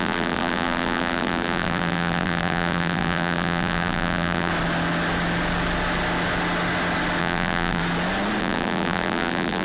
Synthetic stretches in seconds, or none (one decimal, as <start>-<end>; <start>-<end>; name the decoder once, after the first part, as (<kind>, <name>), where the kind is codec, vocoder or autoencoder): 0.0-4.5 (vocoder, BigVGAN v2); 7.2-7.8; 8.4-9.6